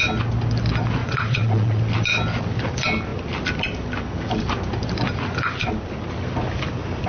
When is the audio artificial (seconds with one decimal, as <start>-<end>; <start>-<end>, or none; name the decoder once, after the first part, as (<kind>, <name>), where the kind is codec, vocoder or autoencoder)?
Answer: 1.0-1.8 (vocoder, Vocos)